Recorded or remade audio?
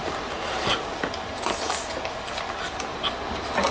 recorded